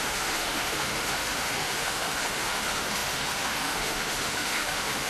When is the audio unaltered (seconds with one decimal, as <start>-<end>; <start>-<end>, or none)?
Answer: none

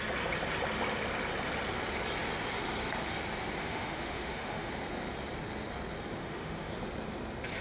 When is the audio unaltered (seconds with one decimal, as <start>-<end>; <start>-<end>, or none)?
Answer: 0.0-3.6; 4.7-6.2; 6.7-7.6